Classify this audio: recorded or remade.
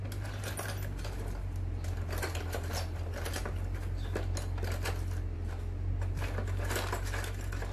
recorded